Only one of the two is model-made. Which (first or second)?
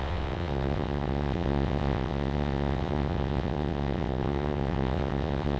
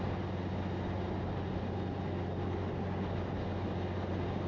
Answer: first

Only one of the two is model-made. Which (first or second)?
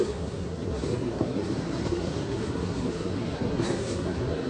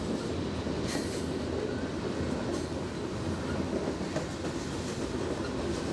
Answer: first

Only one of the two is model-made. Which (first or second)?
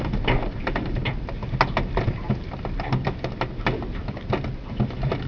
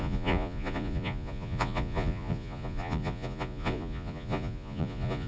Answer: second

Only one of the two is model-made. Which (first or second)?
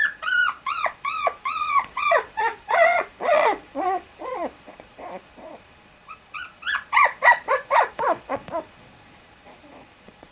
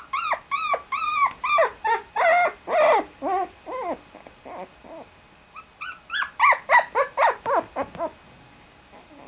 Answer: first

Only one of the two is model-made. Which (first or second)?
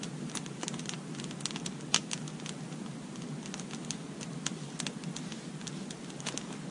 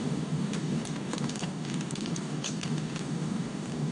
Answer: second